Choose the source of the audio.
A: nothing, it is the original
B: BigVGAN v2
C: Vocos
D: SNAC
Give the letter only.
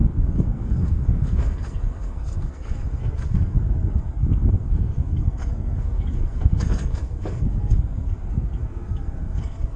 D